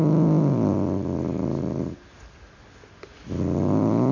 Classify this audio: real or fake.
real